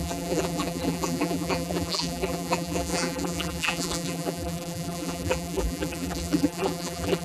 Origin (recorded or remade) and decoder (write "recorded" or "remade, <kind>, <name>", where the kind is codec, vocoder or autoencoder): remade, vocoder, BigVGAN v2